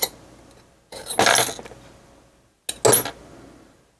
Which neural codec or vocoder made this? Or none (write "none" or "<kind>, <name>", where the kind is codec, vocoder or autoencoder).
none